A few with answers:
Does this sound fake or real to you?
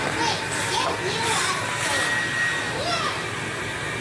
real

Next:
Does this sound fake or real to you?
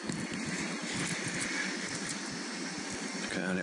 real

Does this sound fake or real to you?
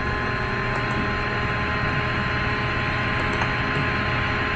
real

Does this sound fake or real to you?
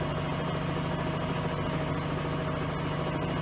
real